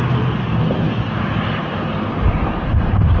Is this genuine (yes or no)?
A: yes